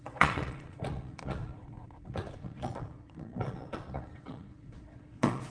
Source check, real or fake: fake